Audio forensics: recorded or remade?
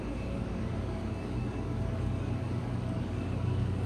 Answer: remade